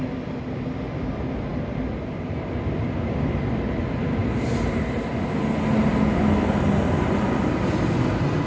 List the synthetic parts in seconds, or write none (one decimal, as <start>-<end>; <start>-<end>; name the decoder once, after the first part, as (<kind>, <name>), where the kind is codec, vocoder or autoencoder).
none